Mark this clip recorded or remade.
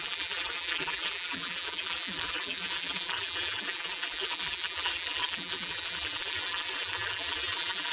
remade